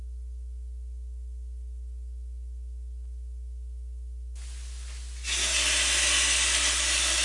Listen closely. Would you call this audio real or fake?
real